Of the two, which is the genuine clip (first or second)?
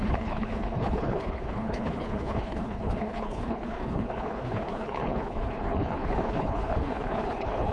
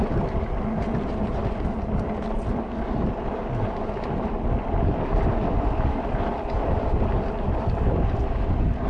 second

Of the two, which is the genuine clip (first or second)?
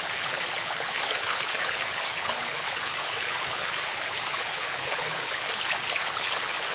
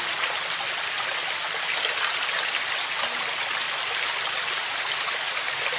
second